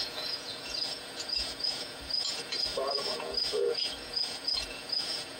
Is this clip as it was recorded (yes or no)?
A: no